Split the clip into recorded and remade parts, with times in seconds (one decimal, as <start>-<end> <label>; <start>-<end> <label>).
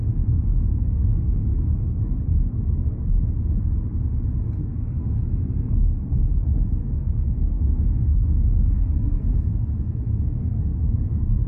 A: 0.0-0.5 recorded; 0.5-3.1 remade; 3.1-4.6 recorded; 4.6-5.7 remade; 5.7-6.8 recorded; 6.8-10.0 remade; 10.0-10.4 recorded; 10.4-11.5 remade